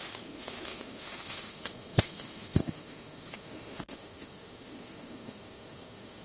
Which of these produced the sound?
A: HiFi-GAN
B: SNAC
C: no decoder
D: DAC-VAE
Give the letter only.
D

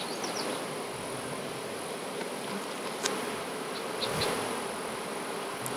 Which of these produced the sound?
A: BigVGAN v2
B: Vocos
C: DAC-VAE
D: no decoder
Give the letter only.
D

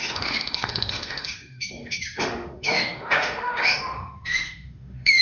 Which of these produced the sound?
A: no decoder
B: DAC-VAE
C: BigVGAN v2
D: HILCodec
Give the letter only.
B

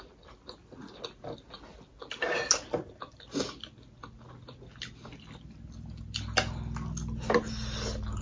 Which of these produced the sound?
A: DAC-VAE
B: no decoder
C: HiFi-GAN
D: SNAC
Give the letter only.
B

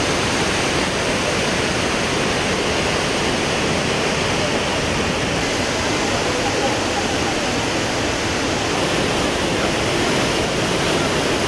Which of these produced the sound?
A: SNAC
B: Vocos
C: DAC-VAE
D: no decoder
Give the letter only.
D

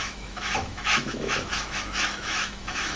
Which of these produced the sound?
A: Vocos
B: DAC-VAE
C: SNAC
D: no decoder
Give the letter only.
B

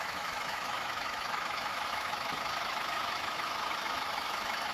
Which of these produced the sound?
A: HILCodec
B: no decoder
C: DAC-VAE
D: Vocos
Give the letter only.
C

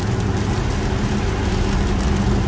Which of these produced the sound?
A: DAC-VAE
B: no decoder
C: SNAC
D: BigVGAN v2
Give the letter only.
B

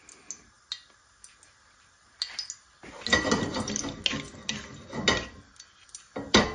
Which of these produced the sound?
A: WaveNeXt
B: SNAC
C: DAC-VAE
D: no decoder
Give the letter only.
D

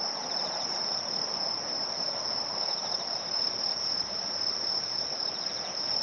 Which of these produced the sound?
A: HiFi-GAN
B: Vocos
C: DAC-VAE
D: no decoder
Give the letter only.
D